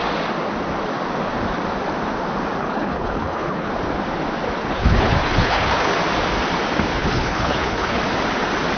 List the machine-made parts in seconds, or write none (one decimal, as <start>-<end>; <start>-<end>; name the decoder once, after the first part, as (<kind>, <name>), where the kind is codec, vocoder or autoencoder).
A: 2.6-3.7 (codec, HILCodec); 4.6-5.9; 7.0-8.0